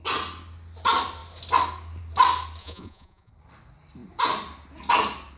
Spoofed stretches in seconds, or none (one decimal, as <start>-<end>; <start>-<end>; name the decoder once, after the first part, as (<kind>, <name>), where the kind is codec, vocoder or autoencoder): 2.6-3.3 (vocoder, Vocos)